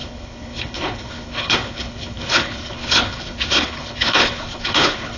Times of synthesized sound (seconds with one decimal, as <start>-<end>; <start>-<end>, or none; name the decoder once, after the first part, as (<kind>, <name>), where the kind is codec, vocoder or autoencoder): 0.0-5.2 (codec, HILCodec)